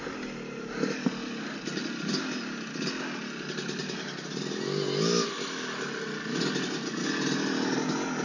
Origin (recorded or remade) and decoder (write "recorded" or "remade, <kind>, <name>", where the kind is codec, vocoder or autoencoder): recorded